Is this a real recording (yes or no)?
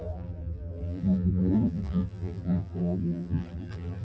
no